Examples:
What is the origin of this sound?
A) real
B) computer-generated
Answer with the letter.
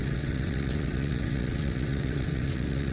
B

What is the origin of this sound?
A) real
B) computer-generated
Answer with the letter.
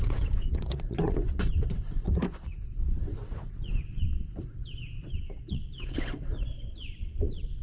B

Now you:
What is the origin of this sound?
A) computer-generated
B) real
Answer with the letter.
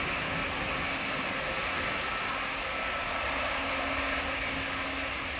B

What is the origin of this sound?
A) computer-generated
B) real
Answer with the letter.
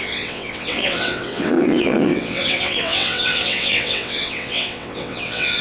A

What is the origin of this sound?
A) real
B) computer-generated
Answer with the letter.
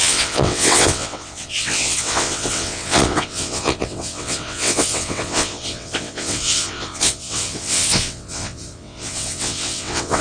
B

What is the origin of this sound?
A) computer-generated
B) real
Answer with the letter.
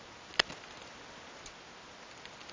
B